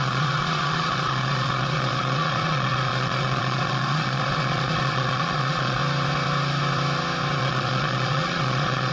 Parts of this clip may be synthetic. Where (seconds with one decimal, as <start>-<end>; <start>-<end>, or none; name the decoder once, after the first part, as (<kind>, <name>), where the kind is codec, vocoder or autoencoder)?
0.0-5.8 (vocoder, Vocos); 7.4-8.9